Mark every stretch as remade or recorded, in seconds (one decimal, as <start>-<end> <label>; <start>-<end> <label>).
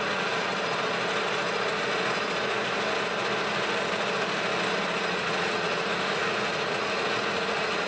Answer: 0.0-0.5 remade; 0.5-5.1 recorded; 5.1-7.9 remade